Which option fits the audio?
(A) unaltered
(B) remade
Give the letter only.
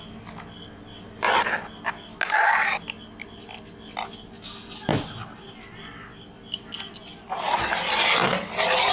A